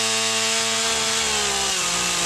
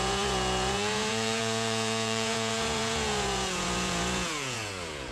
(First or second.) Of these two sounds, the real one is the first